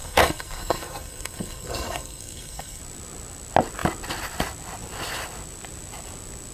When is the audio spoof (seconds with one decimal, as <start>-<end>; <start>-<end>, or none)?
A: 0.0-2.8